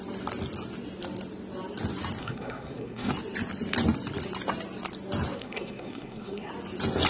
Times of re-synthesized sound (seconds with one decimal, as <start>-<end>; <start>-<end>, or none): 2.2-3.1; 5.4-6.5